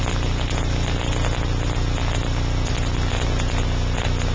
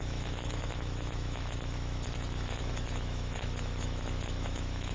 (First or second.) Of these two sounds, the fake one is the second